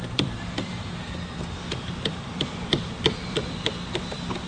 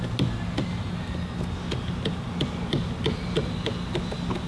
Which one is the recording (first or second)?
second